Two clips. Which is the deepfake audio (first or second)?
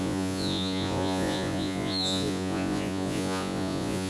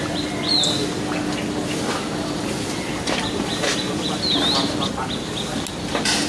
first